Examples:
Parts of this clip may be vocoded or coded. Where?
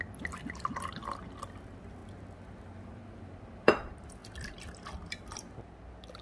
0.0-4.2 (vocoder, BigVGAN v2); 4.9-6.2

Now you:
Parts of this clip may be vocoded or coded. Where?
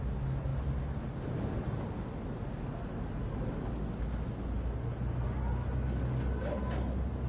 none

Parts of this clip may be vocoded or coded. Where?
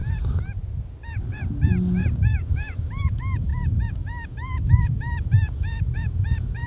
2.2-6.7 (autoencoder, DAC-VAE)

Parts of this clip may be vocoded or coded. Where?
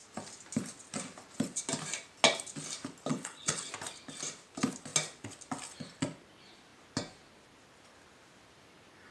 3.1-3.7 (codec, HILCodec)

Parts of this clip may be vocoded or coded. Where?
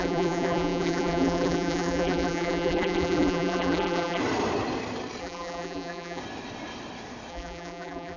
0.0-4.2 (vocoder, BigVGAN v2); 5.2-6.2; 7.3-8.2